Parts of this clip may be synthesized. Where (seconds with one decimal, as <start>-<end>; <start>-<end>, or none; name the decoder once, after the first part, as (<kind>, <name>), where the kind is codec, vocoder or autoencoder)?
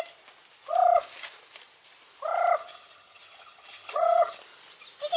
2.6-4.4 (vocoder, HiFi-GAN)